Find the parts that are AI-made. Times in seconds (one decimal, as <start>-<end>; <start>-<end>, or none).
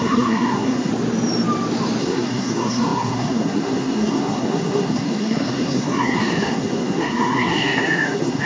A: 0.0-0.9; 2.0-8.5